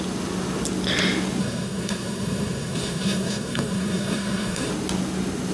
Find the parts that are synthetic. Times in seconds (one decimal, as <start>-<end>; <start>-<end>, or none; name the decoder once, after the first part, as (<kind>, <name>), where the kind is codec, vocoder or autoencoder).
1.4-4.7 (codec, SNAC)